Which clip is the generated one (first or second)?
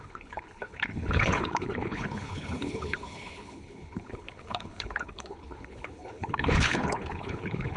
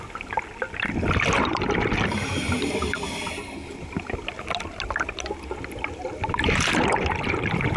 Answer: first